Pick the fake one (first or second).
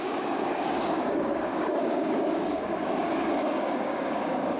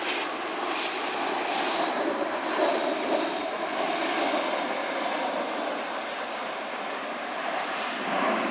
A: first